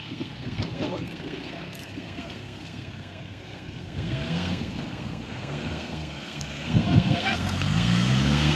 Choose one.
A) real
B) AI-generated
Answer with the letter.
B